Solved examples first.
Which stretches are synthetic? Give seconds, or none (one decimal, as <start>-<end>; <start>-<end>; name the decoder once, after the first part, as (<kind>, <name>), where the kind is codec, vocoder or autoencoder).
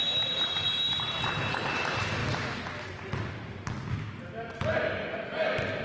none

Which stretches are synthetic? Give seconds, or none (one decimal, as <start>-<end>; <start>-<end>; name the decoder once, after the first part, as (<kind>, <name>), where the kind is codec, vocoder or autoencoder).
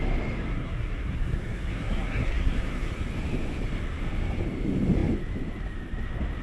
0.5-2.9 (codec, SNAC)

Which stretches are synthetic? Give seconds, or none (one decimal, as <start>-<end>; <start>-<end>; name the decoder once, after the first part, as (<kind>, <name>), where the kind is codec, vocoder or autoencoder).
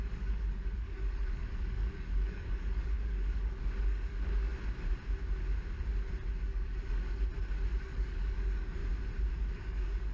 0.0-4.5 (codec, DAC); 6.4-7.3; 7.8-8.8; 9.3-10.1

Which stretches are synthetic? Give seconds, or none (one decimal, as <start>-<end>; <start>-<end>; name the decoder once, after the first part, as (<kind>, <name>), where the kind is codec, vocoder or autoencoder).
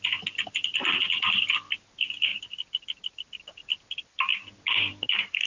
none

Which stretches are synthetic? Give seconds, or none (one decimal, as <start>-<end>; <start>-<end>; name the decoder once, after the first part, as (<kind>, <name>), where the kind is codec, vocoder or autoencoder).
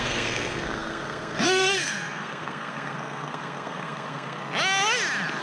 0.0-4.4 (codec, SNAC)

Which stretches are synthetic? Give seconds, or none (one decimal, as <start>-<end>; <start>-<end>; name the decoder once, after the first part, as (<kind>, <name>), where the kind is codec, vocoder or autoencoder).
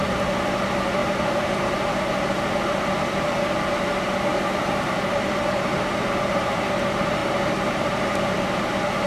1.0-1.8 (vocoder, BigVGAN v2); 4.3-6.7; 7.2-8.6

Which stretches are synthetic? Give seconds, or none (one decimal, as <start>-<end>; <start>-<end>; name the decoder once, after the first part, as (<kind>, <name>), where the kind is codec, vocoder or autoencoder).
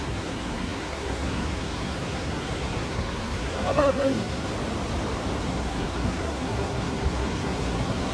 0.0-4.5 (codec, SNAC); 5.4-8.1